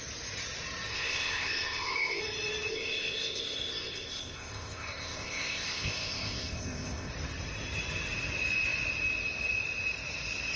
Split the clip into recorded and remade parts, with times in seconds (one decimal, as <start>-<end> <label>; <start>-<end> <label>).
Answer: 0.0-0.9 recorded; 0.9-2.2 remade; 2.2-2.7 recorded; 2.7-7.1 remade; 7.1-10.6 recorded